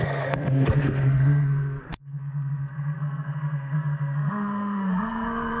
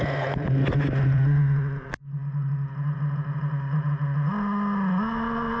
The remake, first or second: first